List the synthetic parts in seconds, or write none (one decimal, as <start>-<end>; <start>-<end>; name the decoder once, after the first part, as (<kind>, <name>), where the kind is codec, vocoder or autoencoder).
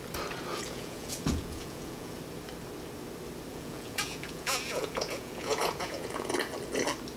0.5-2.2 (vocoder, Vocos); 3.5-6.5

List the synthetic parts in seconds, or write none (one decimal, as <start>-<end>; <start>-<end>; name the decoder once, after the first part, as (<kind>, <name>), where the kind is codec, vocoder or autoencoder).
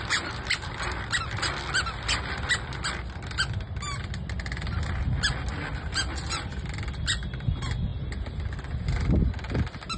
none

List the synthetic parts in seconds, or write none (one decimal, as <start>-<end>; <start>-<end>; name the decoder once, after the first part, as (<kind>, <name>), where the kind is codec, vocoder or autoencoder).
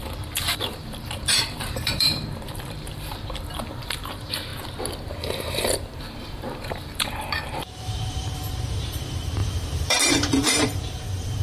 0.0-4.5 (vocoder, BigVGAN v2); 5.1-11.4